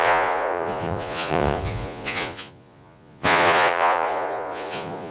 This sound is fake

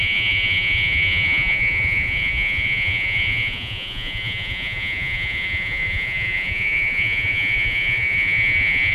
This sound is fake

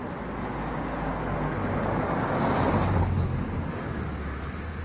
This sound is real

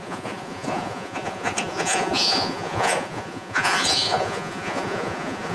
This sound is fake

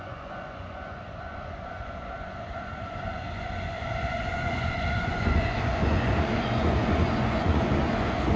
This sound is fake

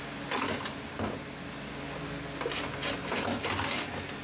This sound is real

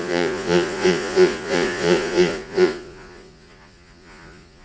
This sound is fake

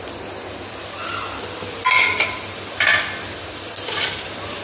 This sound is real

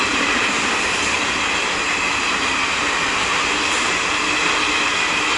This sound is real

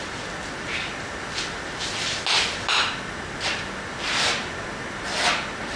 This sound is real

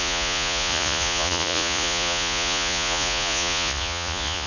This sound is fake